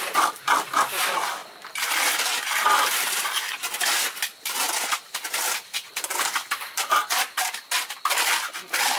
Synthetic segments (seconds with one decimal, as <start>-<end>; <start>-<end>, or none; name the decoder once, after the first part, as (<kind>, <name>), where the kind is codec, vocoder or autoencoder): 0.0-9.0 (vocoder, BigVGAN v2)

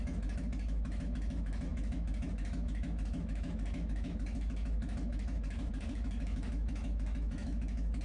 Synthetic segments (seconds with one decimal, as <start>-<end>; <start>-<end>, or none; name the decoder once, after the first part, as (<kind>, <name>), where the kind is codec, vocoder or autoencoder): 0.0-8.0 (autoencoder, DAC-VAE)

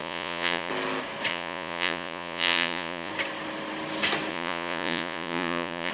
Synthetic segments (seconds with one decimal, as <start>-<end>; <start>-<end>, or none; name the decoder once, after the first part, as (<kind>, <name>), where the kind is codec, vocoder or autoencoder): 0.0-0.7 (vocoder, Vocos); 1.3-3.1; 4.3-5.9

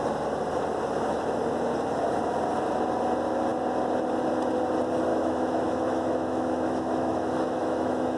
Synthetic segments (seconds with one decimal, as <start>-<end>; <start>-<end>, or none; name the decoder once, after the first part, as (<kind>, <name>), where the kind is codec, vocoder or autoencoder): 5.1-8.2 (autoencoder, DAC-VAE)